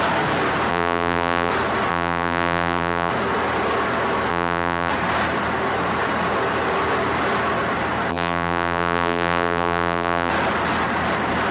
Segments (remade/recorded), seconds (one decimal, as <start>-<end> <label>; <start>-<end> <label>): 0.0-0.7 recorded; 0.7-1.5 remade; 1.5-1.9 recorded; 1.9-3.1 remade; 3.1-4.3 recorded; 4.3-4.9 remade; 4.9-8.1 recorded; 8.1-10.3 remade; 10.3-11.5 recorded